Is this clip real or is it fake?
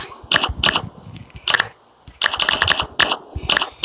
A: real